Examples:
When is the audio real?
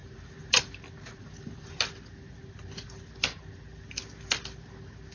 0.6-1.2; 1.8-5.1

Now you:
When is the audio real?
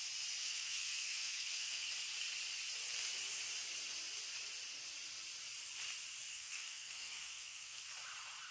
0.0-0.4; 1.9-6.3; 7.8-8.5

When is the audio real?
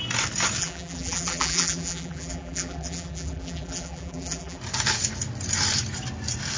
0.0-0.6; 4.6-6.6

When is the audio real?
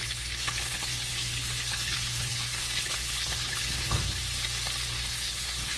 4.2-4.9